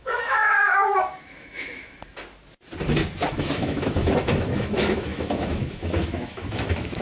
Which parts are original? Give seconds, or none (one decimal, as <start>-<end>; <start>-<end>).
2.0-3.3